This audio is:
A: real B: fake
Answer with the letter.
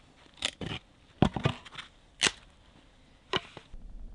A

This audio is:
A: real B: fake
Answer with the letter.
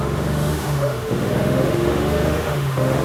B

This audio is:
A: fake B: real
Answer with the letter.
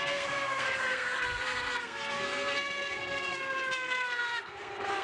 A